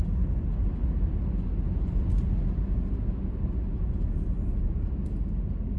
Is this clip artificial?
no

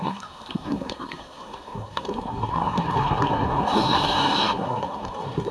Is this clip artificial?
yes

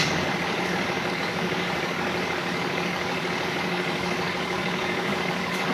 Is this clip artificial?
yes